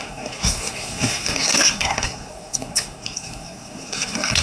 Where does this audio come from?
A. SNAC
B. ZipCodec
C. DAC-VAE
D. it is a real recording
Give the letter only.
A